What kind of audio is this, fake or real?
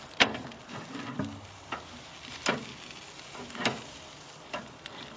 fake